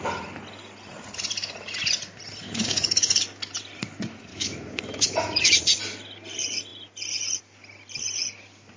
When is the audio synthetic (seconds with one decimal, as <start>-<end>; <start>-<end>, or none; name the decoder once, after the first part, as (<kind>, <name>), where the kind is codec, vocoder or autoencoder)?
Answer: 2.4-3.2 (autoencoder, DAC-VAE); 4.3-5.5